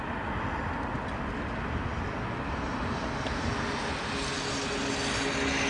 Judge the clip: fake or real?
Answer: real